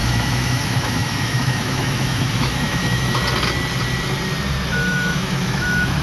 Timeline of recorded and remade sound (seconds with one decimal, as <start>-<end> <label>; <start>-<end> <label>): 0.0-3.2 remade; 3.2-4.7 recorded; 4.7-6.0 remade